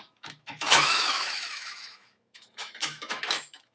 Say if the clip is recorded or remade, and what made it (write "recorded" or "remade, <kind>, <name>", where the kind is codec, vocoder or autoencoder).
remade, autoencoder, DAC-VAE